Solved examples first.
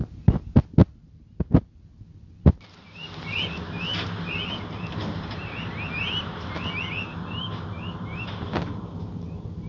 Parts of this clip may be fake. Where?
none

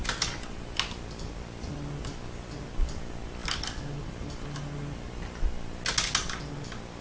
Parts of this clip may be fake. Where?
none

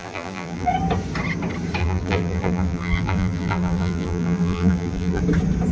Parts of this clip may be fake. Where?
0.0-0.7; 1.8-5.2

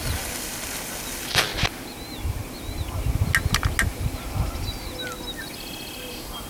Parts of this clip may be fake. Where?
0.0-1.5; 5.4-6.5

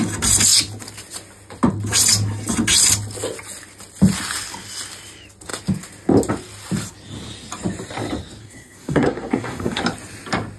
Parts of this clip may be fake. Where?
8.4-9.8